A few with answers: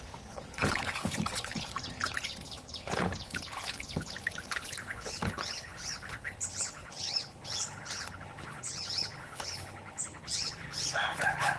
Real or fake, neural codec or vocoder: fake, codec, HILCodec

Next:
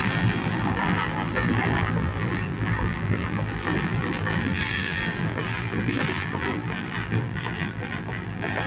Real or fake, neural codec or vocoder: fake, vocoder, BigVGAN v2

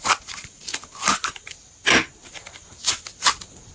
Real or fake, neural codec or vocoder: real